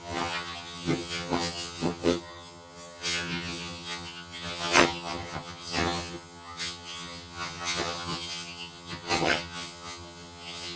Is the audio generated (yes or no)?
yes